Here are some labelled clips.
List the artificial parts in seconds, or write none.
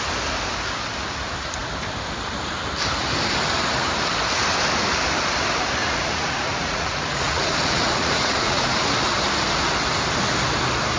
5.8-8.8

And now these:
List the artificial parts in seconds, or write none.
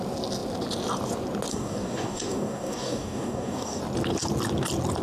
1.5-3.8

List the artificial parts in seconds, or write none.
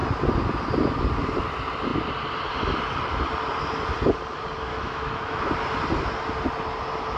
4.7-5.5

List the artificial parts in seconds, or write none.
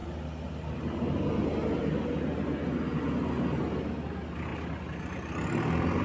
none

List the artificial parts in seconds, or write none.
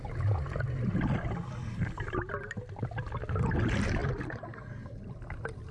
4.0-4.7